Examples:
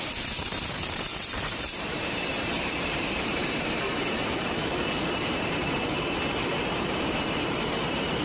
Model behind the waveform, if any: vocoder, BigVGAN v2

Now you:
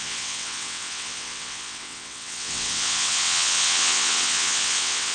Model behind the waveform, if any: vocoder, WaveNeXt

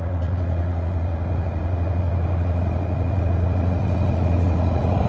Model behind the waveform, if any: vocoder, Vocos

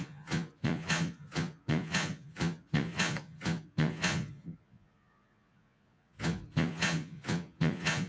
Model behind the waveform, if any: vocoder, Vocos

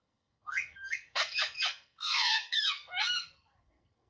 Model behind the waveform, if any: codec, SNAC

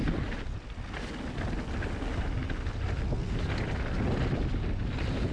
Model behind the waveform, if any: none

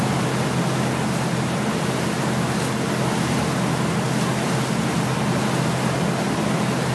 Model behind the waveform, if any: none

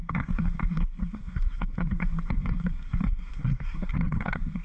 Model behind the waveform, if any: codec, SNAC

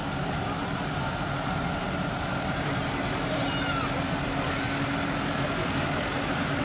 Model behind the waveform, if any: none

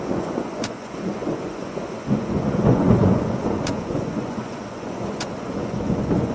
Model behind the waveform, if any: vocoder, Vocos